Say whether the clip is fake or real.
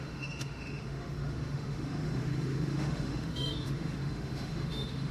fake